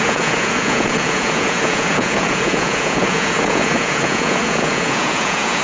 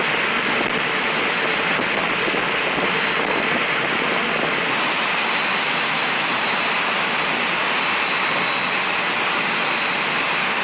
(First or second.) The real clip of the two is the second